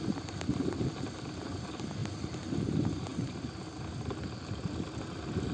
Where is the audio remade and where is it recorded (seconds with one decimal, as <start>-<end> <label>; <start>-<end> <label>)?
0.0-5.5 recorded